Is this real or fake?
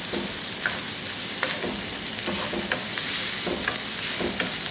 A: real